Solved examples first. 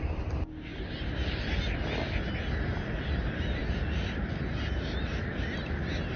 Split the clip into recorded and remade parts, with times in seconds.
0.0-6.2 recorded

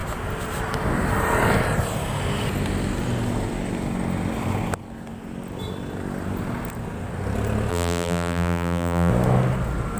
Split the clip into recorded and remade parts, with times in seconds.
0.0-7.7 recorded; 7.7-9.1 remade; 9.1-10.0 recorded

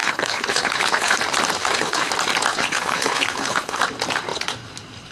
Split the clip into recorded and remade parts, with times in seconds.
0.0-1.2 remade; 1.2-1.6 recorded; 1.6-2.1 remade; 2.1-2.5 recorded; 2.5-3.8 remade; 3.8-5.1 recorded